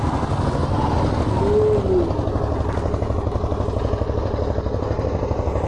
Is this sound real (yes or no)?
yes